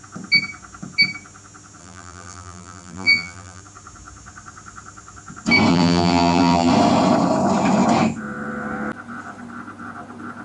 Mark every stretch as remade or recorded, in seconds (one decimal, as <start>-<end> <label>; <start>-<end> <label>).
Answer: 0.0-1.8 recorded; 1.8-3.6 remade; 3.6-5.7 recorded; 5.7-6.7 remade; 6.7-10.4 recorded